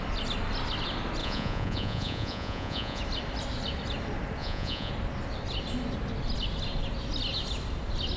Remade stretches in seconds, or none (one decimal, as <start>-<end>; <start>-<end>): 1.2-3.0; 4.4-4.9